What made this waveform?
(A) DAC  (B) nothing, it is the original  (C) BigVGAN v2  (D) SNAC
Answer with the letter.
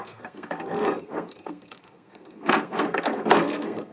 D